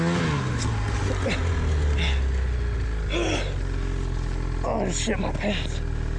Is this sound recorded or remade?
recorded